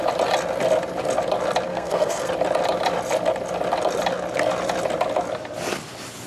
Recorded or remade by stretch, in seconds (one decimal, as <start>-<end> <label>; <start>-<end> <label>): 0.0-1.7 recorded; 1.7-2.3 remade; 2.3-6.3 recorded